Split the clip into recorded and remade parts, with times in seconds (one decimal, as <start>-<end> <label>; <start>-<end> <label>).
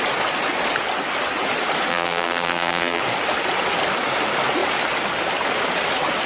0.0-1.9 recorded; 1.9-3.0 remade; 3.0-6.3 recorded